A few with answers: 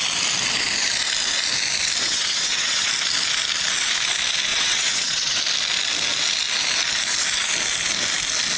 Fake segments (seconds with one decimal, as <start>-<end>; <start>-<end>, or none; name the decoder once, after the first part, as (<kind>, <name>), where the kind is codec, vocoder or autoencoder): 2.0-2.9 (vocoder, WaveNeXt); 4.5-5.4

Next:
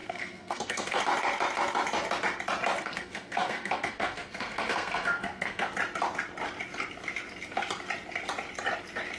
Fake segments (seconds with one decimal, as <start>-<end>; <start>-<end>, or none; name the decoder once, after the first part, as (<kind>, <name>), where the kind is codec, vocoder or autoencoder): 0.0-1.0 (codec, SNAC); 2.8-5.7

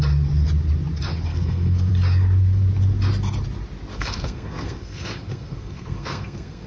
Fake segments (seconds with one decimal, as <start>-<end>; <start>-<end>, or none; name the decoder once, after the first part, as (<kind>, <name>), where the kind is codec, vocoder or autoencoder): 1.3-1.9 (codec, SNAC); 3.9-6.7